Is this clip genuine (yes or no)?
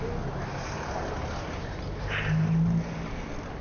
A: yes